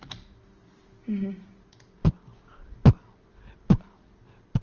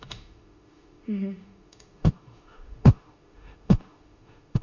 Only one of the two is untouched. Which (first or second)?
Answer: first